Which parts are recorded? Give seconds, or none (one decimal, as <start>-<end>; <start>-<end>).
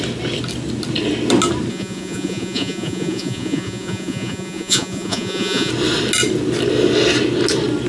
0.0-1.7; 5.7-7.9